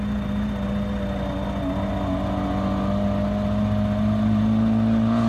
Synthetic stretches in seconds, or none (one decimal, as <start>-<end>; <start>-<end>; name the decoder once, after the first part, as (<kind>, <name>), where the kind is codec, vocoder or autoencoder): none